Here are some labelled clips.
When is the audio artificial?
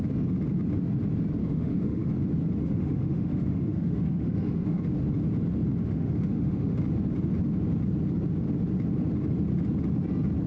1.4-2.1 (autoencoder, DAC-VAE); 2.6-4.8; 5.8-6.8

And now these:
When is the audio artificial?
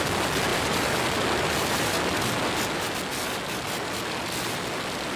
none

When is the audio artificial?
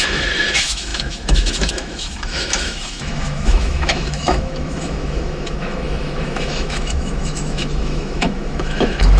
0.0-9.2 (autoencoder, DAC-VAE)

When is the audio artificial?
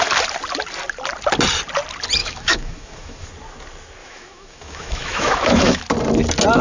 2.2-3.3 (autoencoder, DAC-VAE); 4.0-5.8